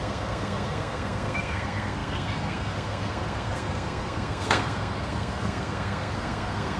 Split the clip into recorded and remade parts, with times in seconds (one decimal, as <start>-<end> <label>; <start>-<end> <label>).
0.0-6.8 remade